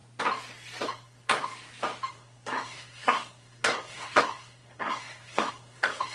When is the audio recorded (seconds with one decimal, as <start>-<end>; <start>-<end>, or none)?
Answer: 0.0-0.9; 1.5-2.1